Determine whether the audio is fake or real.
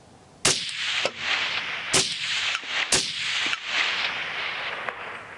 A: real